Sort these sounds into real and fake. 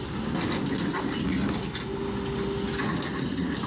real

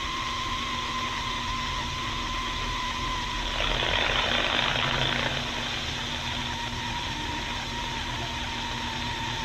real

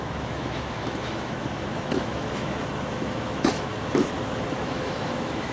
fake